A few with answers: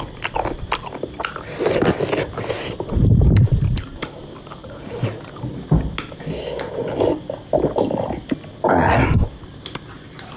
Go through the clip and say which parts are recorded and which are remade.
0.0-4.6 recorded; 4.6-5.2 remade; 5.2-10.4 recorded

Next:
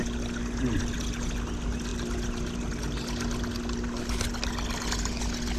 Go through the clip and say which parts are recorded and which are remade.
0.0-5.6 recorded